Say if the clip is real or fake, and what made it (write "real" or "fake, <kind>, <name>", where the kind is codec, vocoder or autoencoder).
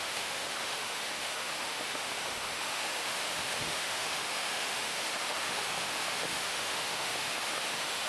fake, autoencoder, DAC-VAE